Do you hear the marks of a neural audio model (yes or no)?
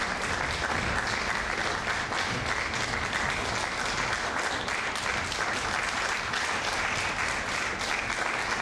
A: no